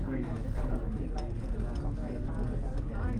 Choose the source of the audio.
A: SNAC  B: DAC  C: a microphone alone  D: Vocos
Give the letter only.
B